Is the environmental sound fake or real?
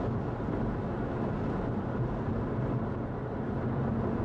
real